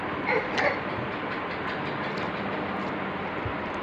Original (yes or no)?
yes